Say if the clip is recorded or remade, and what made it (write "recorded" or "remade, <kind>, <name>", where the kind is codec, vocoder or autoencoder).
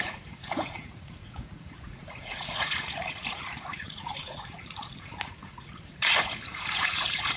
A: remade, vocoder, Vocos